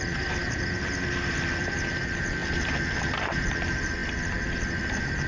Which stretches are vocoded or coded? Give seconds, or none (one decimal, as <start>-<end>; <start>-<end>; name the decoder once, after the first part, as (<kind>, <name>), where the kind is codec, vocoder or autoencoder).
none